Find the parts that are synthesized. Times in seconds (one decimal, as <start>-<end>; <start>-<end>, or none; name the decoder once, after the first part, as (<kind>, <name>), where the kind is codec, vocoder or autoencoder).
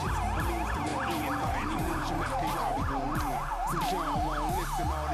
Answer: 0.9-3.5 (vocoder, BigVGAN v2)